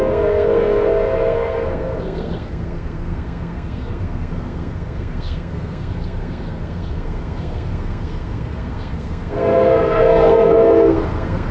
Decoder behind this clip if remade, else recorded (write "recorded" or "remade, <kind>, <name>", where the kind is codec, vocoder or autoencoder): remade, codec, SNAC